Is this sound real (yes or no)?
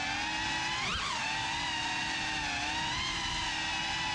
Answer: yes